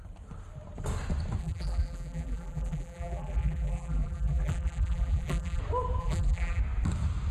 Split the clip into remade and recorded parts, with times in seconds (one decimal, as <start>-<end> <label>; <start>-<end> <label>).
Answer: 0.0-1.4 recorded; 1.4-5.6 remade; 5.6-6.0 recorded; 6.0-6.6 remade; 6.6-7.3 recorded